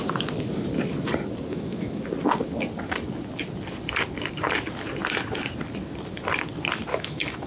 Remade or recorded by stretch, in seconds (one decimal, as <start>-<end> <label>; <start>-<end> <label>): 0.0-1.5 recorded; 1.5-2.0 remade; 2.0-6.9 recorded; 6.9-7.5 remade